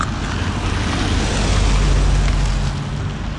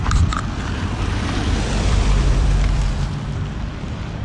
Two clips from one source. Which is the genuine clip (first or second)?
first